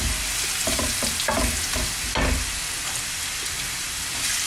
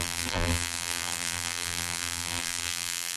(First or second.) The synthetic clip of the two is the second